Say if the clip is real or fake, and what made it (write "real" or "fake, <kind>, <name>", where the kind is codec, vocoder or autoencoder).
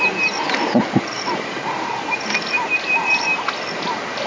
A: real